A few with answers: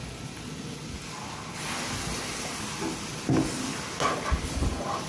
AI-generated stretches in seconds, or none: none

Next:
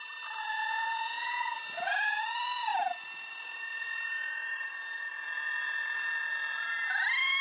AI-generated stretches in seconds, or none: 0.6-2.2 (vocoder, Vocos)